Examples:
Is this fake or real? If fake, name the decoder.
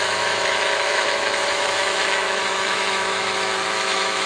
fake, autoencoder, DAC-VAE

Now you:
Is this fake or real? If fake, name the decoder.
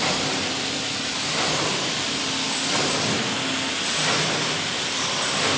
real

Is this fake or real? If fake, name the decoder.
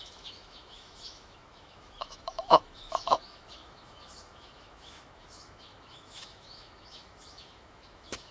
fake, autoencoder, DAC-VAE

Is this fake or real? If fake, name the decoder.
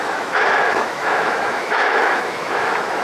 fake, autoencoder, DAC-VAE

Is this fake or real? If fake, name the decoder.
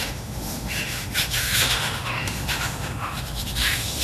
fake, autoencoder, DAC-VAE